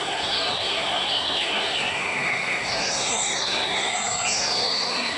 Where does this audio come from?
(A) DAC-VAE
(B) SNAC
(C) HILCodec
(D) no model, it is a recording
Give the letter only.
B